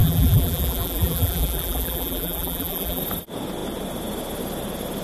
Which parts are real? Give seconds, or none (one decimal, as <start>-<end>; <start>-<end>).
3.0-5.0